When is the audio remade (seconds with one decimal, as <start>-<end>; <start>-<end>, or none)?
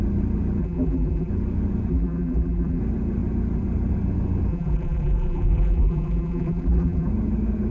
0.6-1.3; 1.9-2.8; 4.5-7.1